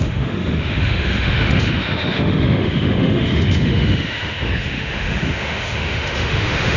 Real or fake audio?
fake